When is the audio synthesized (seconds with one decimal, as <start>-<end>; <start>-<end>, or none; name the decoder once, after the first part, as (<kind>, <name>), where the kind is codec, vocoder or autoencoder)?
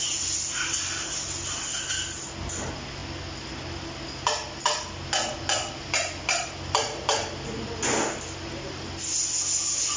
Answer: none